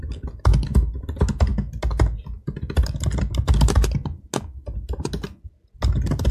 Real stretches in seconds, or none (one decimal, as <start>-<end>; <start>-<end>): 0.0-6.3